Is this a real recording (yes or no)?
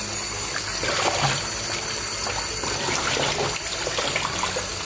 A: yes